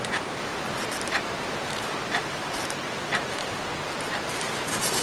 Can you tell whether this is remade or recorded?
remade